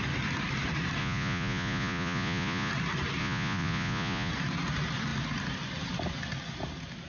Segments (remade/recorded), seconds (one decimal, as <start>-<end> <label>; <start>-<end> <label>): 0.0-1.0 recorded; 1.0-2.7 remade; 2.7-3.2 recorded; 3.2-4.3 remade; 4.3-7.1 recorded

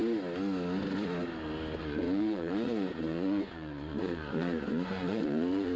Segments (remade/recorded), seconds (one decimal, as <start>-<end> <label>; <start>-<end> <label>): 0.0-1.8 recorded; 1.8-5.8 remade

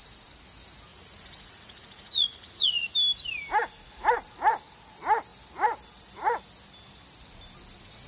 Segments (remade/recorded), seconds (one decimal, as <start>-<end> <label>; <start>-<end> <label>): 0.0-0.9 recorded; 0.9-2.9 remade; 2.9-8.1 recorded

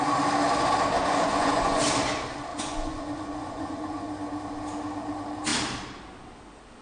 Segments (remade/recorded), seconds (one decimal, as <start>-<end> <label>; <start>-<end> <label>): 0.0-1.0 recorded; 1.0-1.8 remade; 1.8-2.5 recorded; 2.5-4.1 remade; 4.1-6.8 recorded

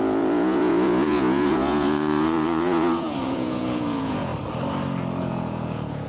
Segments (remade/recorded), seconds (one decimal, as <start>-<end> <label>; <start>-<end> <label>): 0.0-4.3 remade; 4.3-5.2 recorded; 5.2-6.1 remade

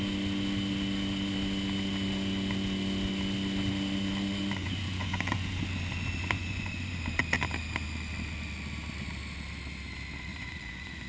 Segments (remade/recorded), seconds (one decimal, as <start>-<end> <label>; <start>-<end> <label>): 0.0-4.6 recorded; 4.6-5.6 remade; 5.6-6.2 recorded; 6.2-7.0 remade; 7.0-10.3 recorded; 10.3-11.1 remade

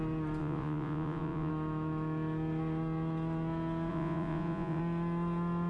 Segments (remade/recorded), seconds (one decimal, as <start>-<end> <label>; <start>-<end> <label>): 0.0-0.4 recorded; 0.4-1.5 remade; 1.5-3.9 recorded; 3.9-4.8 remade; 4.8-5.7 recorded